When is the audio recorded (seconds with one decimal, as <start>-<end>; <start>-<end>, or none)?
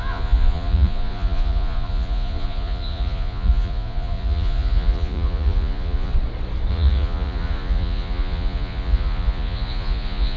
6.1-6.7